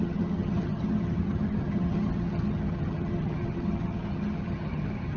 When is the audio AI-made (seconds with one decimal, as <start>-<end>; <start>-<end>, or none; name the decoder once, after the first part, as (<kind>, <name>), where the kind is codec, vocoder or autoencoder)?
0.0-5.2 (vocoder, HiFi-GAN)